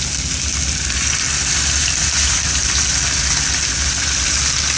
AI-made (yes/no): no